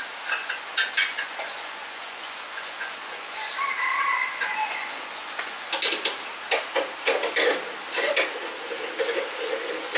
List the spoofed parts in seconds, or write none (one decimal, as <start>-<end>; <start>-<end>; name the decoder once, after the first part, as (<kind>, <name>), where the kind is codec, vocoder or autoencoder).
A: 0.4-3.5 (vocoder, Vocos); 4.1-5.7